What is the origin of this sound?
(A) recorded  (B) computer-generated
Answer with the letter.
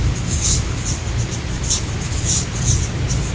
A